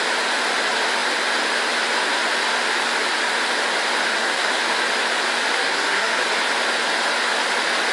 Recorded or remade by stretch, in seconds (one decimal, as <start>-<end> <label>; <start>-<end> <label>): 0.0-4.1 recorded; 4.1-4.6 remade; 4.6-5.5 recorded; 5.5-6.2 remade; 6.2-7.9 recorded